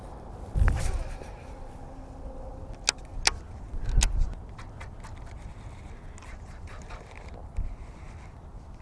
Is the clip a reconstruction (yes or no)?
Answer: no